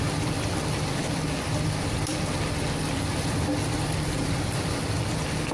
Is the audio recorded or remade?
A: remade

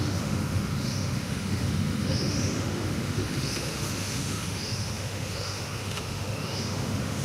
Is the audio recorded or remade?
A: remade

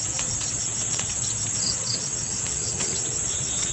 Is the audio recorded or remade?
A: remade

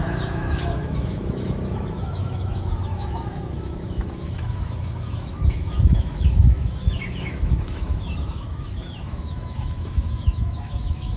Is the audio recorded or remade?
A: remade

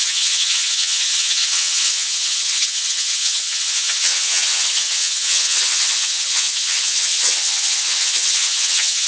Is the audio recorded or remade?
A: remade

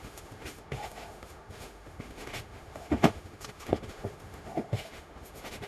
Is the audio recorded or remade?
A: remade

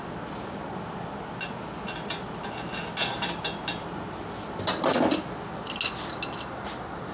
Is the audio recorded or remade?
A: recorded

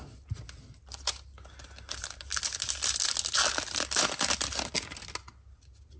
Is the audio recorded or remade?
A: recorded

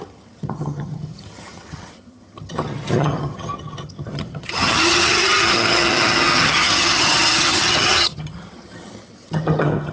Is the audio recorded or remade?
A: remade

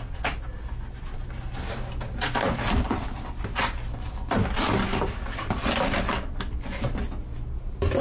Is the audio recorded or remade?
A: recorded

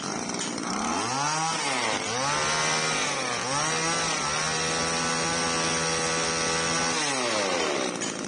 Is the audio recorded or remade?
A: recorded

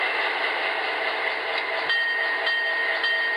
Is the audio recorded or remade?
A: recorded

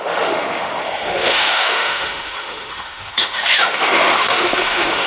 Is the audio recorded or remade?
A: remade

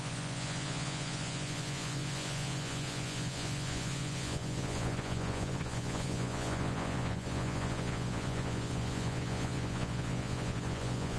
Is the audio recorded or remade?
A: remade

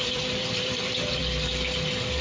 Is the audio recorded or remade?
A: remade